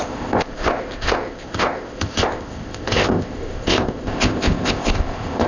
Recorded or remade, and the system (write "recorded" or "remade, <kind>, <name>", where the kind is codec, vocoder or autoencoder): remade, codec, ZipCodec